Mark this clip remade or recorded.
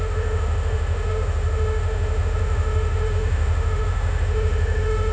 remade